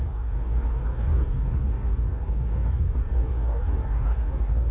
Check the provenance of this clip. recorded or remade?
remade